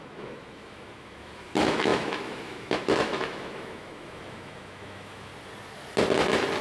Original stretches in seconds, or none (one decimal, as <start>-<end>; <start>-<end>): 5.3-6.6